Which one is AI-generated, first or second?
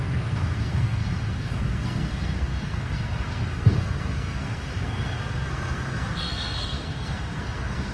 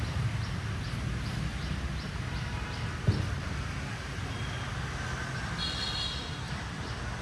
first